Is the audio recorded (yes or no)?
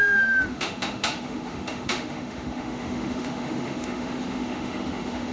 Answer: no